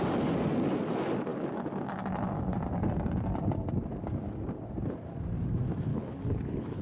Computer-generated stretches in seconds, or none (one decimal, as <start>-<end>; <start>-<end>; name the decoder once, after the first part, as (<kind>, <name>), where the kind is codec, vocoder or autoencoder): 5.9-6.8 (codec, HILCodec)